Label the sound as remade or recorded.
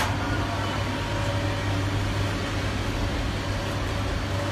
recorded